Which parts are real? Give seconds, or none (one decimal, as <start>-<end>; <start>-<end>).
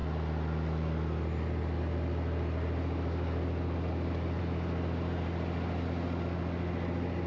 0.0-7.3